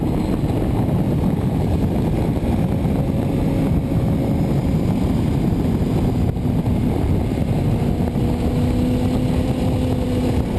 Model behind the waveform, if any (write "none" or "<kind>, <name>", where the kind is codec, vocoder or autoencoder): none